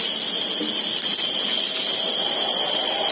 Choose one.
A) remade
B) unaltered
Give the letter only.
B